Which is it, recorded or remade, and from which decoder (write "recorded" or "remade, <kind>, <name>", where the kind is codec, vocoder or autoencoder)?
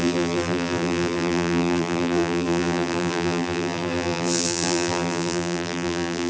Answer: remade, vocoder, BigVGAN v2